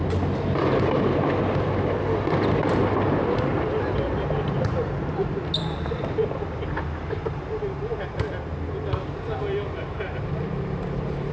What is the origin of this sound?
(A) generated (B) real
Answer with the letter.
B